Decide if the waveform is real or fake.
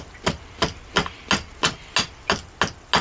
real